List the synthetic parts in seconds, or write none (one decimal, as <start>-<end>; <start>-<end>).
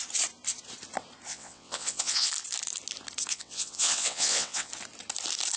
1.3-2.3; 3.3-4.7